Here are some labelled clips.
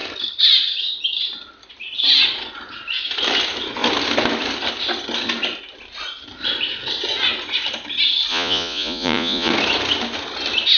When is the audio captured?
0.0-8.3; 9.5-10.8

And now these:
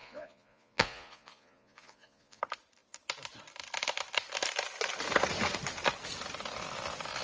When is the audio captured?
2.4-7.2

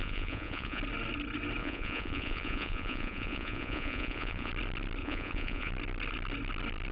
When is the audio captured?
0.8-1.6; 4.5-5.0; 5.7-6.9

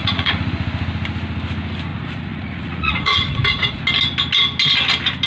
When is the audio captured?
0.5-1.9; 3.8-5.3

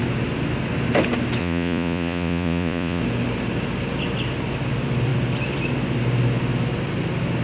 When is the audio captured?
0.0-1.4; 3.0-7.4

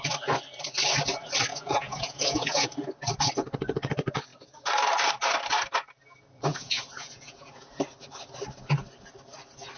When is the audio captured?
0.0-1.5; 2.7-6.5; 7.8-9.8

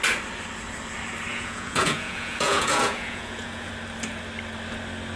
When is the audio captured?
0.0-1.3; 3.7-5.2

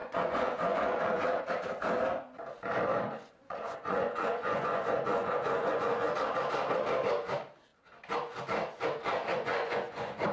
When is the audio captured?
1.4-2.9; 6.1-9.3